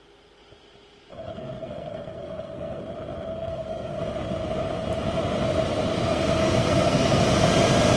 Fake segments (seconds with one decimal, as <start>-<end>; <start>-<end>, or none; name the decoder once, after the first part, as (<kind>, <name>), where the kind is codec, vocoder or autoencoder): 1.1-2.8 (codec, SNAC); 3.3-4.0; 6.1-7.2